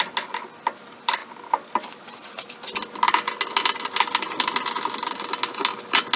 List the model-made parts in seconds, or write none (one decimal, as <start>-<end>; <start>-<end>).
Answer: none

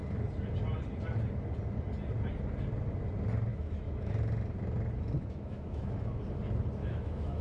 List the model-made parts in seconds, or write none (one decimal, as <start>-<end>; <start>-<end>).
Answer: 3.5-4.1; 5.2-6.2; 6.8-7.4

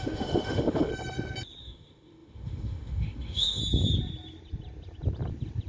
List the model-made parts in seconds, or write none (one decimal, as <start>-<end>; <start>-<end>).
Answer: 0.0-0.9; 1.6-3.6

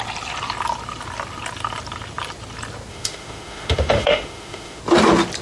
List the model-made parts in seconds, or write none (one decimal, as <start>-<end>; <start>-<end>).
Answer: 2.9-4.8

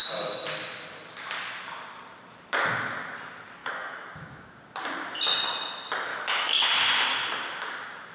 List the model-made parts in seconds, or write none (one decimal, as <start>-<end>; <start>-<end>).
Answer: 3.6-4.5; 6.1-6.7